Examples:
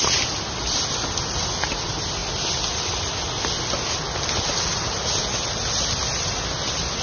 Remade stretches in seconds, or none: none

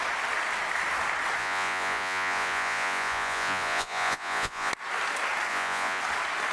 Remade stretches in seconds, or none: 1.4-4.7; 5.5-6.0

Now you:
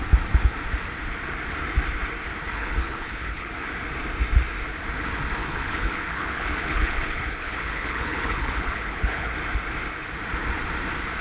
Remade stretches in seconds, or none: 2.5-3.5; 5.4-9.3

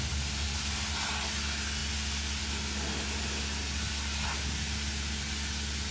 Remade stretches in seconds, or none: none

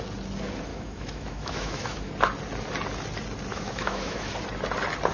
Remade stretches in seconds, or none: 0.7-2.1; 3.5-4.3

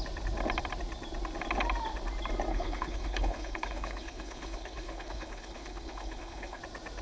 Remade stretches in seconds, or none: 2.5-6.6